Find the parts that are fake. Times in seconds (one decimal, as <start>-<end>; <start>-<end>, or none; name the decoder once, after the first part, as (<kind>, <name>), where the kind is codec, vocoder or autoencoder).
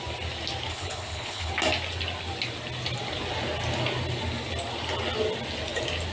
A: 0.7-1.5 (codec, HILCodec)